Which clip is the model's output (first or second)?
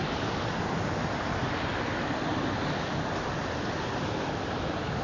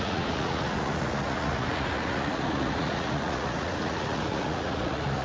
second